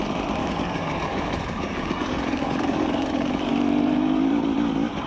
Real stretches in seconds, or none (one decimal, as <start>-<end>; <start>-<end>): 0.0-0.4; 3.5-5.1